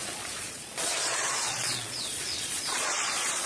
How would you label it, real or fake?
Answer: fake